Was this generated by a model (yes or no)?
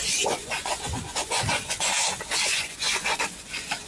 yes